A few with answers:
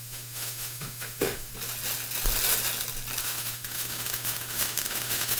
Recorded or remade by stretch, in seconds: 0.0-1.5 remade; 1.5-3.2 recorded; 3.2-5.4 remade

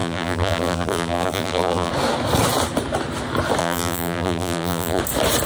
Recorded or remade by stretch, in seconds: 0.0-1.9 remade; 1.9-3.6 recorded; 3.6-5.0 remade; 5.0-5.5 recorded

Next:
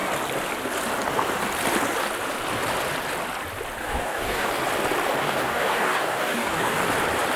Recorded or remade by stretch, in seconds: 0.0-3.8 recorded; 3.8-4.5 remade; 4.5-5.2 recorded; 5.2-6.8 remade; 6.8-7.4 recorded